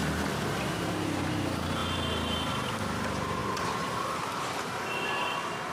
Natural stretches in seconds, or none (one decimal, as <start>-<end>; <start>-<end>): 1.8-2.5